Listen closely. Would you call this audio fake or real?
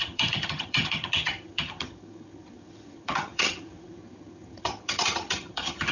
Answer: fake